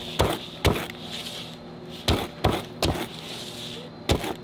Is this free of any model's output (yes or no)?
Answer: yes